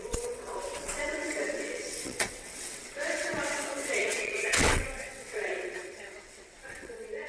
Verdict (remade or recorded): remade